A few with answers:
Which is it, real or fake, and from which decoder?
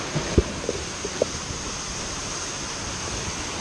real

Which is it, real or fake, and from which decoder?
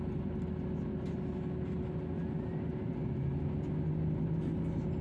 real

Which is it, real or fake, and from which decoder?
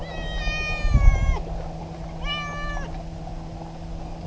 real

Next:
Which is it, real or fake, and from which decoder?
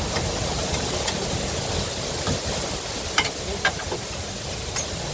real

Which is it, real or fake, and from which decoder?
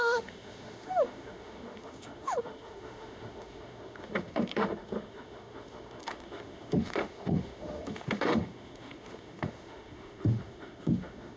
fake, autoencoder, DAC-VAE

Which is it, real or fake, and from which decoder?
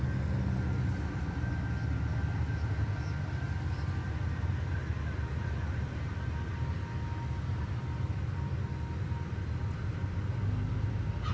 real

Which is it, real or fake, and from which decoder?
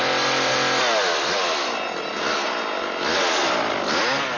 real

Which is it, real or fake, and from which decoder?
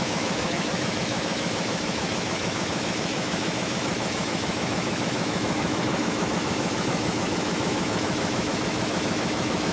fake, autoencoder, DAC-VAE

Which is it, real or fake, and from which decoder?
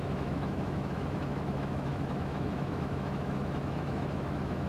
fake, autoencoder, DAC-VAE